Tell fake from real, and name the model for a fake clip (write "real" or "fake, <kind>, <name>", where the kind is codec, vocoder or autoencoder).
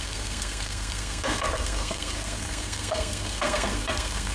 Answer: fake, codec, SNAC